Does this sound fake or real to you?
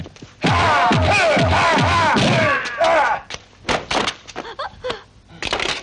real